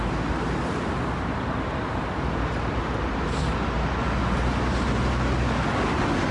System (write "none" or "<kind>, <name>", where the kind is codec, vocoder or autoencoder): none